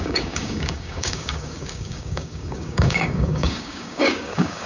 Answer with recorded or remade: remade